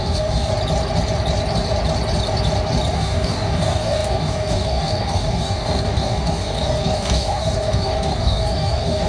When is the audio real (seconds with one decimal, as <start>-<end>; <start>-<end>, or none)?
0.5-2.9